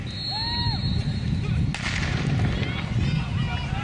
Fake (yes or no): no